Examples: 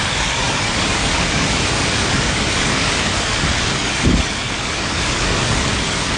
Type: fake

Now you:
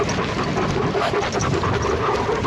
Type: real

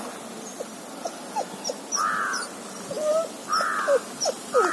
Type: real